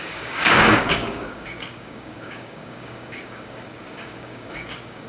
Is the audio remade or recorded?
remade